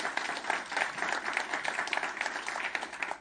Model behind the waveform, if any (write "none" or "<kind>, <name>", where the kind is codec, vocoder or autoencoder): none